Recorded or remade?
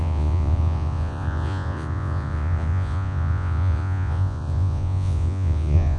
remade